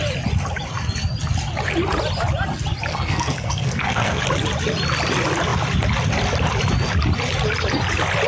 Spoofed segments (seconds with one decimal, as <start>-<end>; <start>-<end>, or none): 2.9-4.2